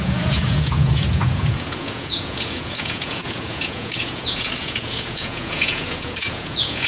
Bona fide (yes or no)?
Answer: no